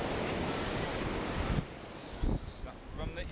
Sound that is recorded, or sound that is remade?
recorded